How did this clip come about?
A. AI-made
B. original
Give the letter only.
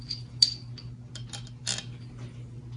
B